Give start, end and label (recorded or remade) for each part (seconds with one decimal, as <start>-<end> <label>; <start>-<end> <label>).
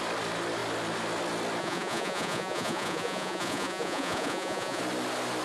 0.0-1.6 recorded; 1.6-4.8 remade; 4.8-5.4 recorded